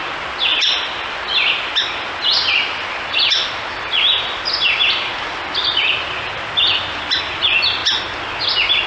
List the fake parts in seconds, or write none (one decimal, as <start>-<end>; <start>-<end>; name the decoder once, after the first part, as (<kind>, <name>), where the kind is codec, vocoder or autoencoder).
none